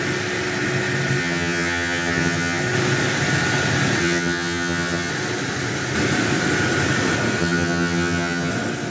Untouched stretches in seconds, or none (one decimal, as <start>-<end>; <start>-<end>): 0.0-1.2; 2.6-4.0; 5.1-7.4; 8.5-8.9